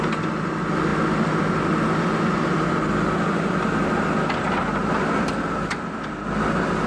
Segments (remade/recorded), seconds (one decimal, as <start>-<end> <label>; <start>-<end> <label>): 0.0-6.9 recorded